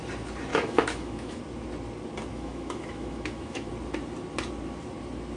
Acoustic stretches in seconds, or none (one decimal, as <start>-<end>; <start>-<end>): 0.0-0.5; 1.4-2.3; 3.7-5.4